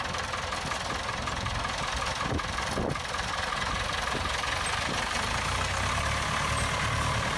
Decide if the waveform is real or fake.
real